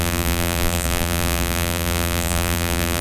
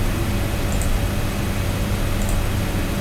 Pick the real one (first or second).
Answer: second